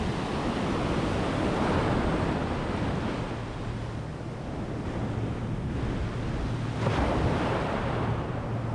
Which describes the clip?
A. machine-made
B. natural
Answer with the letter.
B